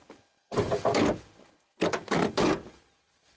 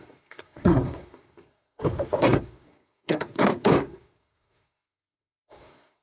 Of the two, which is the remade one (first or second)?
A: second